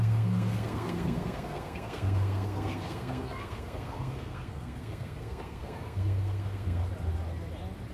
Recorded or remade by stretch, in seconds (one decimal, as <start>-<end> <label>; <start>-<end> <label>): 0.0-6.9 remade; 6.9-7.9 recorded